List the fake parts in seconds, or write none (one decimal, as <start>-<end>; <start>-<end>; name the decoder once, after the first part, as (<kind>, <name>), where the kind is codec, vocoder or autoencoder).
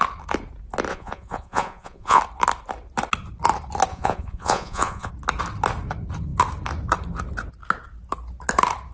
0.9-2.2 (vocoder, Vocos); 3.9-5.1